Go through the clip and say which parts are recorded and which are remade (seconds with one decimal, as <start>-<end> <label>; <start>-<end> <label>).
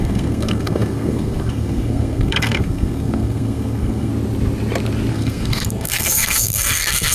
0.0-4.1 remade; 4.1-5.1 recorded; 5.1-7.1 remade